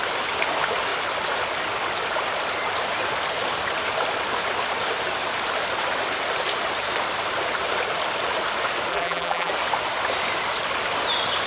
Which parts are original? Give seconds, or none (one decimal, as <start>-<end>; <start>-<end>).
0.0-8.9; 9.5-11.5